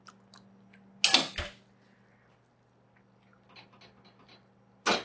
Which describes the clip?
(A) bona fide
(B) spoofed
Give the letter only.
A